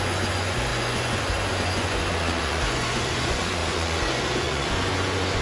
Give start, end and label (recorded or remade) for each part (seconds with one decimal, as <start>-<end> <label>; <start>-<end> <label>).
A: 0.0-5.4 remade